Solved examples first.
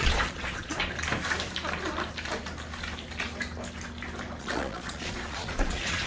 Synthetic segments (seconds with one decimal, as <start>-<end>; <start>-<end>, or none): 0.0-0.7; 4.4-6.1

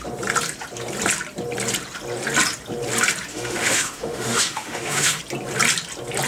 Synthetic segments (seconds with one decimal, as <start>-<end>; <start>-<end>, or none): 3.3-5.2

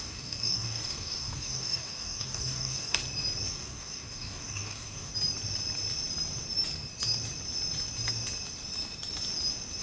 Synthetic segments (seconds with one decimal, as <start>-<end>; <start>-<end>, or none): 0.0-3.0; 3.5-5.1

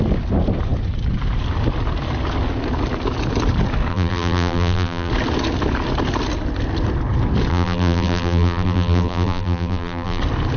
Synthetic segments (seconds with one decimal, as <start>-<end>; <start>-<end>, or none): 3.9-5.1; 7.5-10.2